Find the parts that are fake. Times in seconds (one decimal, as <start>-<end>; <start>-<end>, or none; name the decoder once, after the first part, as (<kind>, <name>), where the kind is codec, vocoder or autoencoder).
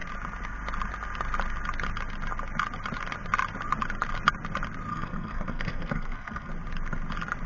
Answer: 4.9-6.5 (codec, SNAC)